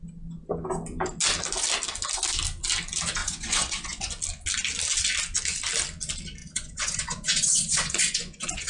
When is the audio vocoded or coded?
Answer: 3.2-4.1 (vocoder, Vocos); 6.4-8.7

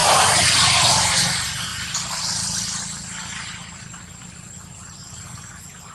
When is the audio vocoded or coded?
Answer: 0.0-0.8 (vocoder, BigVGAN v2); 1.7-5.2

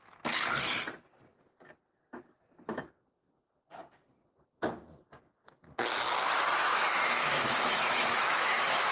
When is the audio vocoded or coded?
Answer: 6.6-8.9 (autoencoder, DAC-VAE)

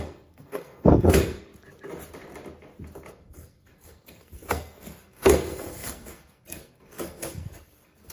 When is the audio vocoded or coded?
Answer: 0.0-1.5 (codec, SNAC); 3.1-8.1

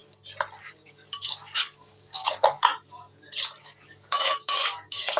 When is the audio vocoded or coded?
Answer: 0.6-2.7 (codec, DAC); 3.6-5.2